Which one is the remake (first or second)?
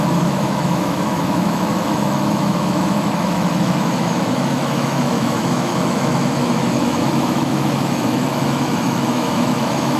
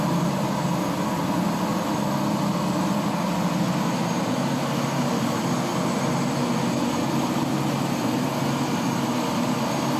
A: first